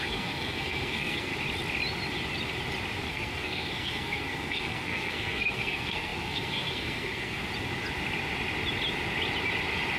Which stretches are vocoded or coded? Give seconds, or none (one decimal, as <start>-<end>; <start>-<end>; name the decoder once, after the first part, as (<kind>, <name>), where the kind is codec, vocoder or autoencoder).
0.0-1.3 (codec, SNAC); 3.1-7.4